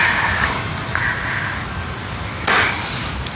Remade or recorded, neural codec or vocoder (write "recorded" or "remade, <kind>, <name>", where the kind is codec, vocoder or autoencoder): recorded